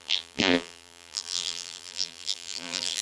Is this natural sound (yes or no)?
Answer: no